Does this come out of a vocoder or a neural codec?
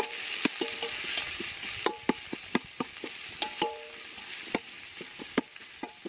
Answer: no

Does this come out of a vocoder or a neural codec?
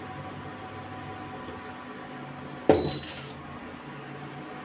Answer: no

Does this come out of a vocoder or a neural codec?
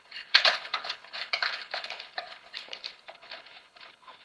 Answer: yes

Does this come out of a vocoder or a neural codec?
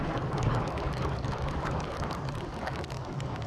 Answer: yes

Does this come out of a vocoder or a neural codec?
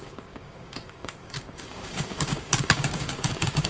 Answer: yes